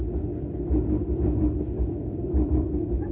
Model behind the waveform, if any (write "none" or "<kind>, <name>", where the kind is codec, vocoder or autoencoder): vocoder, BigVGAN v2